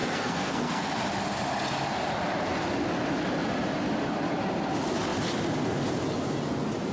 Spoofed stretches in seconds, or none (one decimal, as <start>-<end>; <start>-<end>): 0.0-1.0